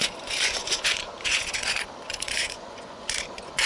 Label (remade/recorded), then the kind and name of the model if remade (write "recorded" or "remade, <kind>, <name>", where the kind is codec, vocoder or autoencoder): remade, vocoder, Vocos